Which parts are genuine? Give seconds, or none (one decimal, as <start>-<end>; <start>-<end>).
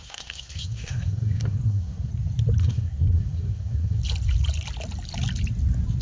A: 2.1-2.6; 4.0-6.0